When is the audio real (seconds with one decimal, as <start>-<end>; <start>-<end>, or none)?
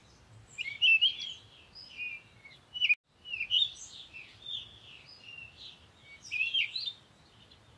1.4-7.8